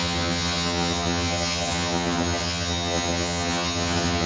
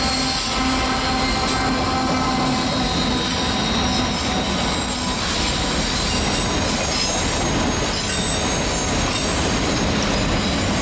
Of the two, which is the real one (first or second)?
second